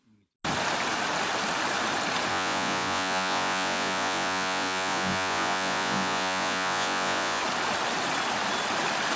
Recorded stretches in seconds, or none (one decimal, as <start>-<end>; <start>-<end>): 0.0-2.3; 7.4-9.2